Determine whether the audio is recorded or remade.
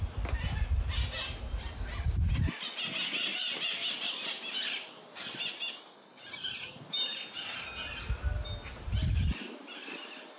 recorded